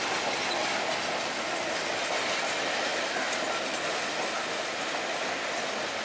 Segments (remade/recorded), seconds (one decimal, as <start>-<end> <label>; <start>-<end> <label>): 0.0-6.0 recorded